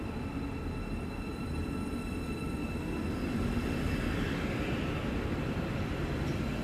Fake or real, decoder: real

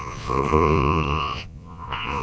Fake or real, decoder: fake, vocoder, Vocos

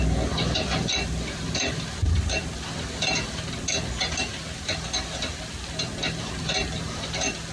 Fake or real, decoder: real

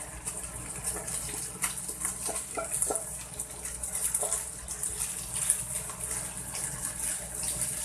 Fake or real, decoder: real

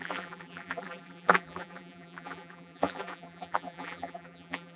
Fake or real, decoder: fake, vocoder, BigVGAN v2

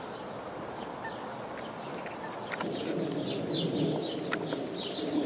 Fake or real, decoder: real